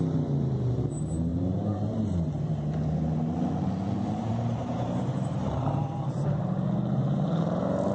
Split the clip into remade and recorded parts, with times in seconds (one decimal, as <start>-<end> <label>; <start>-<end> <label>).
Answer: 0.0-1.3 recorded; 1.3-1.8 remade; 1.8-4.3 recorded; 4.3-6.4 remade; 6.4-7.0 recorded; 7.0-7.9 remade